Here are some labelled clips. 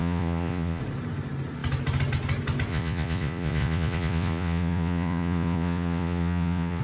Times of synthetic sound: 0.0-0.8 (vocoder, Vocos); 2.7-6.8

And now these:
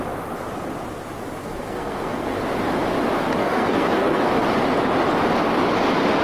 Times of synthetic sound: 1.4-2.4 (codec, SNAC); 3.4-4.3

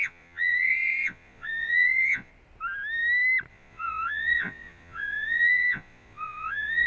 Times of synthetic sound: 0.0-2.3 (vocoder, Vocos); 3.5-6.9